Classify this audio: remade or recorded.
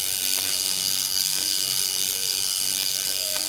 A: remade